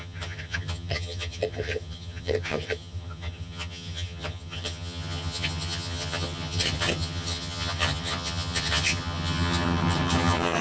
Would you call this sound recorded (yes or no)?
no